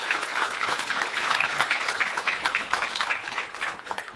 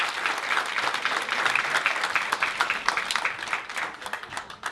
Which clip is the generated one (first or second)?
first